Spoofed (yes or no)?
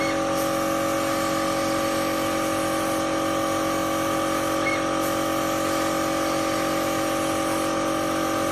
no